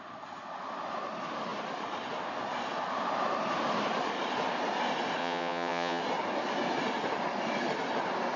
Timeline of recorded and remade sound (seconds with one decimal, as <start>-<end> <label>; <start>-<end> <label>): 0.0-5.2 recorded; 5.2-6.0 remade; 6.0-8.4 recorded